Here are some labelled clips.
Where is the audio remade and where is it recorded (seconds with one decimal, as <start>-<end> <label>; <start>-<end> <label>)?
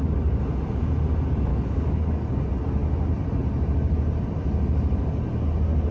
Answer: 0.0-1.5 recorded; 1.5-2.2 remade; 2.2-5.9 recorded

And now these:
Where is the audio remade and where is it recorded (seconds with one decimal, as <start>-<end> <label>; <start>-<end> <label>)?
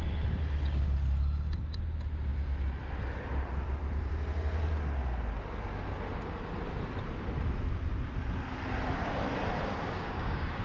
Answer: 0.0-9.7 recorded; 9.7-10.6 remade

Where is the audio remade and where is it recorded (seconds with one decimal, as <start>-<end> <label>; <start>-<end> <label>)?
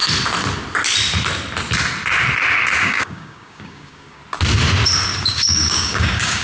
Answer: 0.0-2.8 recorded; 2.8-4.2 remade; 4.2-5.2 recorded; 5.2-6.4 remade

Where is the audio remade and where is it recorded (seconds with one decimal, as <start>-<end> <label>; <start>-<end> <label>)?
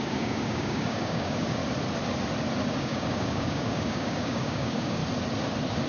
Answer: 0.0-1.6 remade; 1.6-2.7 recorded; 2.7-5.0 remade; 5.0-5.9 recorded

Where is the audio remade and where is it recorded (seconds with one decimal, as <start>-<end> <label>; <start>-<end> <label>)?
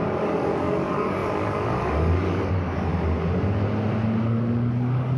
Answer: 0.0-2.9 remade; 2.9-4.2 recorded; 4.2-5.2 remade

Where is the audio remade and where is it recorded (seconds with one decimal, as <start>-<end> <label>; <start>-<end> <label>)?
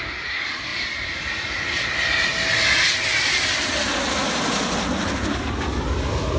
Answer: 0.0-6.4 recorded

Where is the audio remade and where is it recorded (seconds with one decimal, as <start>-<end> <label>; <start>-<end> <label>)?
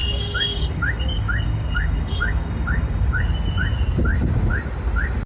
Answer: 0.0-3.2 remade; 3.2-5.3 recorded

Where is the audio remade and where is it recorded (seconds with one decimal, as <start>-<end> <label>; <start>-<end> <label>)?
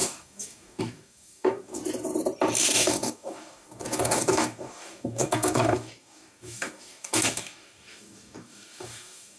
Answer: 0.0-1.8 remade; 1.8-2.6 recorded; 2.6-9.4 remade